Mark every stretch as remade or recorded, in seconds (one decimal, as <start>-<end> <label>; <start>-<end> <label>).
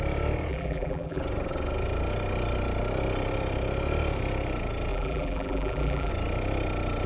0.0-0.5 recorded; 0.5-1.2 remade; 1.2-4.9 recorded; 4.9-6.1 remade; 6.1-7.1 recorded